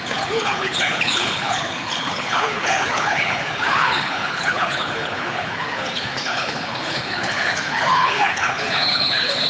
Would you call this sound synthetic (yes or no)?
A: yes